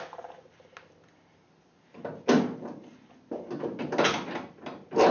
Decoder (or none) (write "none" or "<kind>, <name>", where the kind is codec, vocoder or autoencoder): none